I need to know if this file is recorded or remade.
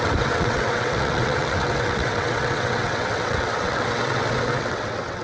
remade